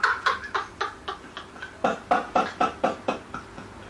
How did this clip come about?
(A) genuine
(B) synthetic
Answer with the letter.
A